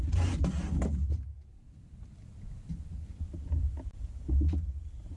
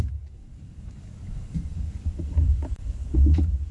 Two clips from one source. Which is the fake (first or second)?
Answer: second